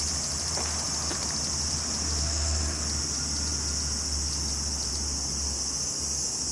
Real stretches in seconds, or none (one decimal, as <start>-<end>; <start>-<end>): 0.0-2.2; 2.8-6.5